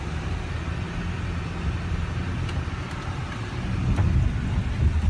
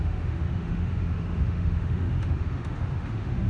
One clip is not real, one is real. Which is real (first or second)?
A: first